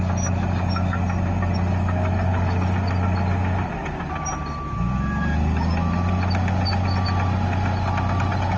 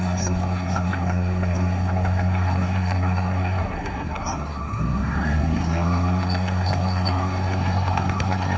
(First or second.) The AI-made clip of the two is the second